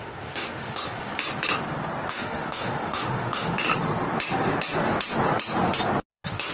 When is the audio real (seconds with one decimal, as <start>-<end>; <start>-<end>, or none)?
1.1-2.1; 3.7-6.1